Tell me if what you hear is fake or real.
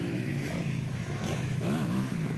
fake